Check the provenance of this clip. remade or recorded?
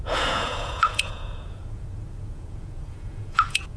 remade